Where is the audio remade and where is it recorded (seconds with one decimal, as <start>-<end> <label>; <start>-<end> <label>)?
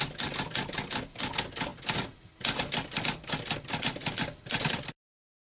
0.0-5.5 recorded